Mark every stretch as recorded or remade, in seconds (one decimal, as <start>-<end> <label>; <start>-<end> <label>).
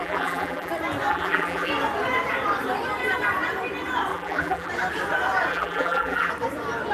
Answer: 0.0-0.7 remade; 0.7-1.1 recorded; 1.1-1.7 remade; 1.7-4.1 recorded; 4.1-4.7 remade; 4.7-5.5 recorded; 5.5-6.3 remade; 6.3-6.9 recorded